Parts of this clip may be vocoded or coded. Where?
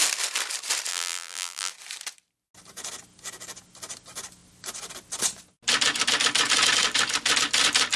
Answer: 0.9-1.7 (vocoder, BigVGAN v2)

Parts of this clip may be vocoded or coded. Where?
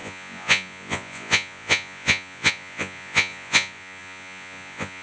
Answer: 0.0-5.0 (vocoder, Vocos)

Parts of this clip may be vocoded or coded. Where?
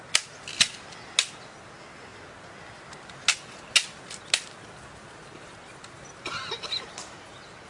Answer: none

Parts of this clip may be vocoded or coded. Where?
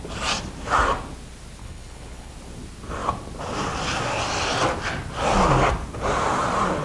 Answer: 1.6-2.3 (codec, HILCodec)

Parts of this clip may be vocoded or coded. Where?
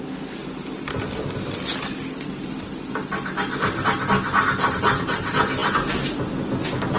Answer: none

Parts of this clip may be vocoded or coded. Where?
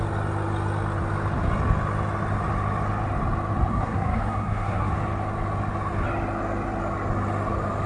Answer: 3.7-4.9 (codec, SNAC)